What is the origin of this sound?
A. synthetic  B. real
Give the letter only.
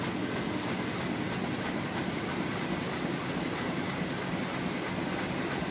B